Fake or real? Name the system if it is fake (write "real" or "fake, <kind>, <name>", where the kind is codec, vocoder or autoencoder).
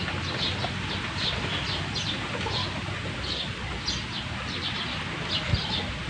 real